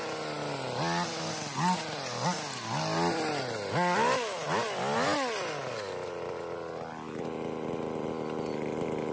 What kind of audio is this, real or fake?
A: real